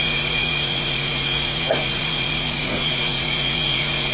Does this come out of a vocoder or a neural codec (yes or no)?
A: yes